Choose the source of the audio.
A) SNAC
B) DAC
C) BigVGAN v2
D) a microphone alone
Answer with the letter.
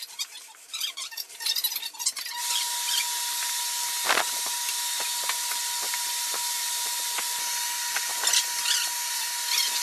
D